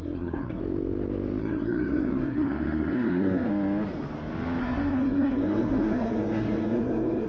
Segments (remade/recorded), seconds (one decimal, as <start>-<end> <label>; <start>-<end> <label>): 0.0-0.6 remade; 0.6-1.4 recorded; 1.4-3.5 remade; 3.5-4.6 recorded; 4.6-7.3 remade